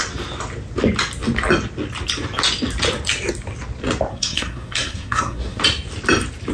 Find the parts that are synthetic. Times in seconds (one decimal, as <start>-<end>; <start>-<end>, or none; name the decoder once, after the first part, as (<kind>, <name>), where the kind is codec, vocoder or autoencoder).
4.1-5.6 (codec, SNAC)